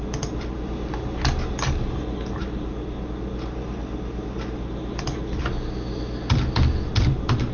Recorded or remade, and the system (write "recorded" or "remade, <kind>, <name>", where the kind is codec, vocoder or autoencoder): recorded